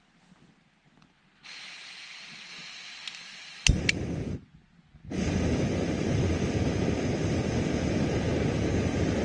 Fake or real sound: real